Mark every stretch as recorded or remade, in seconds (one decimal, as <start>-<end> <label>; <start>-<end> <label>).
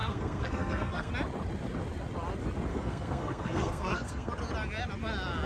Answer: 0.0-1.1 remade; 1.1-2.7 recorded; 2.7-4.3 remade; 4.3-5.5 recorded